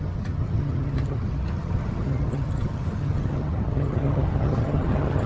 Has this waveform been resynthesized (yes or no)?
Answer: yes